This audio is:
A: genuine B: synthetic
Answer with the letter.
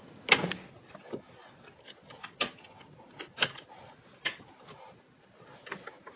A